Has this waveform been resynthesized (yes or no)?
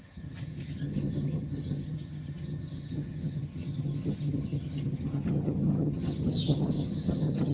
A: yes